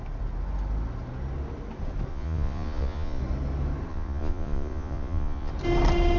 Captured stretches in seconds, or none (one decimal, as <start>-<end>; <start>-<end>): 0.0-2.1; 3.2-3.9; 5.5-6.2